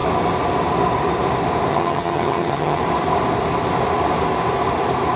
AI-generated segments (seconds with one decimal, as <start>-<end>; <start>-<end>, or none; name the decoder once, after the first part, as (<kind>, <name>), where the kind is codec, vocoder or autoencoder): 1.7-2.8 (vocoder, HiFi-GAN)